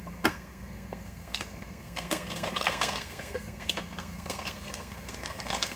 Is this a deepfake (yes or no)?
yes